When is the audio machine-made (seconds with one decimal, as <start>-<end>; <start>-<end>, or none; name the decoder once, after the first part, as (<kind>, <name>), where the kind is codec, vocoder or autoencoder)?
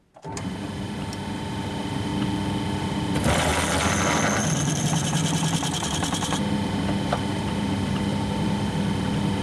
0.0-2.1 (vocoder, BigVGAN v2); 2.7-3.5; 4.8-9.4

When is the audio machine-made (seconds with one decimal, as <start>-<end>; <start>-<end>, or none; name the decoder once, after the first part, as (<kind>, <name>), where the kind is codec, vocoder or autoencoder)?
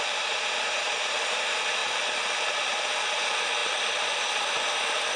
0.0-3.6 (vocoder, BigVGAN v2); 4.3-5.2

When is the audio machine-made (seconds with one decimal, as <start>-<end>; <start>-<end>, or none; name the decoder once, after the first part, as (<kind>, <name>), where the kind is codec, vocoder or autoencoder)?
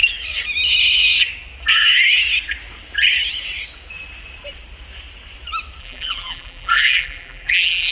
5.8-7.9 (vocoder, BigVGAN v2)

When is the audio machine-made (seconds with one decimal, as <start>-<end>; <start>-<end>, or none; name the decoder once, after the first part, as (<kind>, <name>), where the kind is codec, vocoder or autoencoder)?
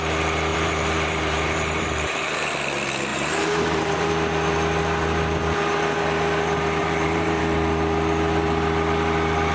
0.5-2.5 (vocoder, BigVGAN v2); 3.1-4.1; 6.8-7.4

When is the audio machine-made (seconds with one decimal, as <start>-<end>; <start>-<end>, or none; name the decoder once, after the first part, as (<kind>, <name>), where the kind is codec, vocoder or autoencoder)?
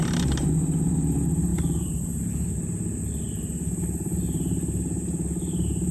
1.5-2.3 (vocoder, BigVGAN v2)